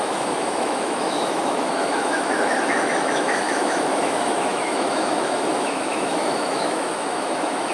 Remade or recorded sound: remade